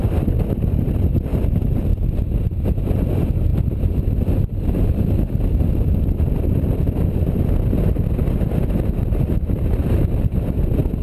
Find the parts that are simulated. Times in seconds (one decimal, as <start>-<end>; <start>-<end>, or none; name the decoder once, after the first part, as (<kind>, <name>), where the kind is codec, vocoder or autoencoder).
3.5-7.2 (vocoder, BigVGAN v2)